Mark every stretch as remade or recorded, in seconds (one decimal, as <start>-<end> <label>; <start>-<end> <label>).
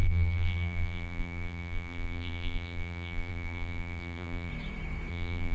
0.0-4.5 remade; 4.5-5.1 recorded; 5.1-5.5 remade